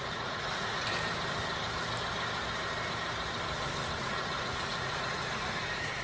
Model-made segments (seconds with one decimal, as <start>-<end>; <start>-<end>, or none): 0.0-0.9; 4.0-6.0